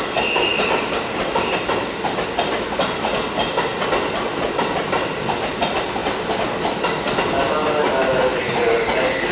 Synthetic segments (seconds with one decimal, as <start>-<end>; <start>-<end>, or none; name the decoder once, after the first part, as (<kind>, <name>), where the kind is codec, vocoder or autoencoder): 0.5-1.2 (vocoder, BigVGAN v2); 8.3-8.8